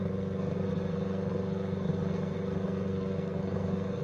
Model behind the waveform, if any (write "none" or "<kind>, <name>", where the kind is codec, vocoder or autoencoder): codec, SNAC